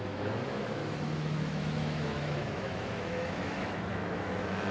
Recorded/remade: remade